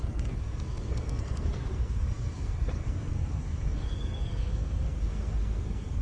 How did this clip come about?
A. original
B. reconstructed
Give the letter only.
B